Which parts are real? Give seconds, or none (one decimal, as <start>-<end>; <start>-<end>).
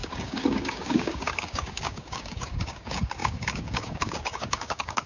none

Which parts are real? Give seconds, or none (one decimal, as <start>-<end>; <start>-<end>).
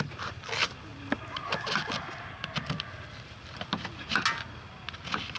0.0-5.4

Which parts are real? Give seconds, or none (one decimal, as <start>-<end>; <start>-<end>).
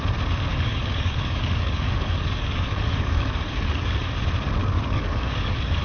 0.0-0.5; 4.0-4.6